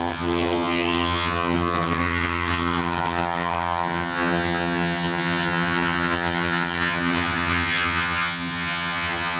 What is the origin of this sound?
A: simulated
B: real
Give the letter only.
A